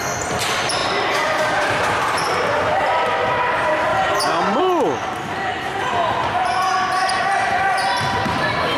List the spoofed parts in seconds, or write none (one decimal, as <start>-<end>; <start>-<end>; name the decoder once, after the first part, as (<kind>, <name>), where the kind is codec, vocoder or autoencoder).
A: 0.8-2.0 (vocoder, BigVGAN v2); 3.9-4.6